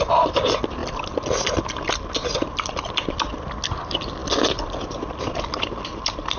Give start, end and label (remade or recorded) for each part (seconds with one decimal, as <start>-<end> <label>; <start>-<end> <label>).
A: 0.0-6.4 recorded